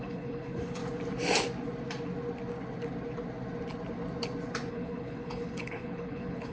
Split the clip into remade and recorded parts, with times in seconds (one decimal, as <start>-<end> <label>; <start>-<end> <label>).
0.0-0.8 remade; 0.8-4.7 recorded; 4.7-6.5 remade